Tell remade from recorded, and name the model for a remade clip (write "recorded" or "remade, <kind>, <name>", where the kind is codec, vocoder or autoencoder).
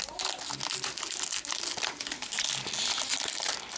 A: recorded